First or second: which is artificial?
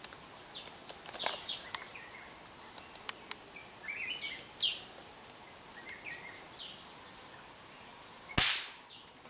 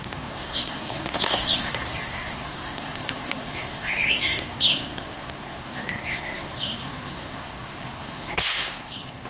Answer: second